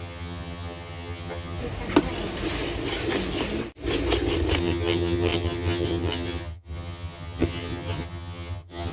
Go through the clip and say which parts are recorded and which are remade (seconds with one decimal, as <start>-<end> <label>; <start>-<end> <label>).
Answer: 0.0-1.6 remade; 1.6-4.6 recorded; 4.6-8.9 remade